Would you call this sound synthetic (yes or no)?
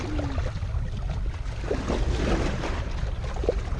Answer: no